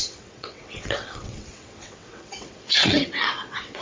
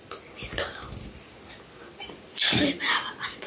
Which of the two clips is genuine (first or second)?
second